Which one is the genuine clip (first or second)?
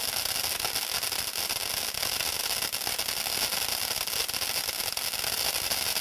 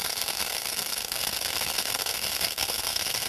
first